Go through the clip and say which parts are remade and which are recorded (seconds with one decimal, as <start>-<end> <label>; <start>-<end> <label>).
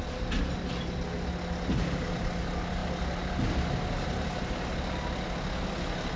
0.0-6.2 recorded